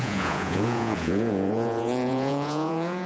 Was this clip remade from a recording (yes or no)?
yes